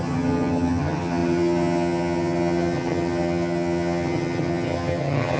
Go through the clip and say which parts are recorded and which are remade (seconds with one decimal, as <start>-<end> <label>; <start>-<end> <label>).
0.0-5.4 remade

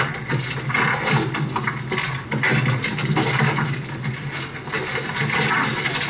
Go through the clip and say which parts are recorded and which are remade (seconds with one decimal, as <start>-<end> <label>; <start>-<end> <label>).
0.0-6.1 recorded

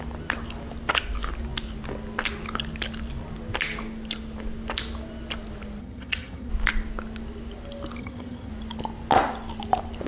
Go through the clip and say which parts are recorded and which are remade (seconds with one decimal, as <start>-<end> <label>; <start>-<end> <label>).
0.0-5.8 recorded; 5.8-6.5 remade; 6.5-8.0 recorded; 8.0-8.5 remade; 8.5-10.1 recorded

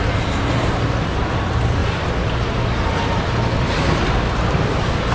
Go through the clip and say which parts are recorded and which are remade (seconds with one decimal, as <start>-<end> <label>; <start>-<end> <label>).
0.0-5.1 recorded

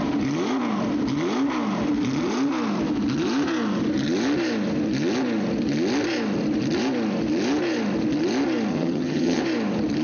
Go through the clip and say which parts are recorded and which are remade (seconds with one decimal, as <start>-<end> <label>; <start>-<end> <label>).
0.0-8.7 recorded; 8.7-9.4 remade; 9.4-10.0 recorded